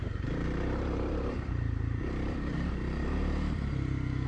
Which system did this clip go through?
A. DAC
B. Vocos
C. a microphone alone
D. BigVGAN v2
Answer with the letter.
D